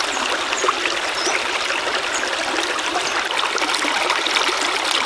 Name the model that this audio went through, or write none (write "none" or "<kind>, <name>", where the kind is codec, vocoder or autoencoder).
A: none